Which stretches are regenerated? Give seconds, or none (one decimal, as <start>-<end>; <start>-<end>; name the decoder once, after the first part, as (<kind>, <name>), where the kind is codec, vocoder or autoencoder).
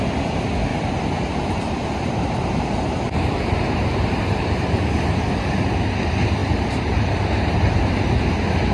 0.7-5.3 (vocoder, BigVGAN v2); 6.4-8.0